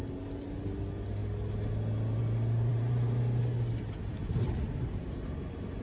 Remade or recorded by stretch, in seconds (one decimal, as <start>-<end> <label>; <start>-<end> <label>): 0.0-2.7 recorded; 2.7-3.4 remade; 3.4-4.2 recorded; 4.2-5.1 remade; 5.1-5.8 recorded